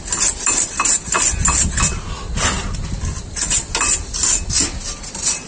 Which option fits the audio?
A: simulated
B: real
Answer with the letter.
B